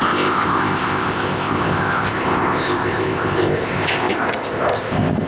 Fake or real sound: fake